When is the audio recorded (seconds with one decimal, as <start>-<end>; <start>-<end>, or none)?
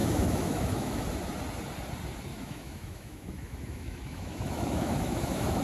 1.0-2.3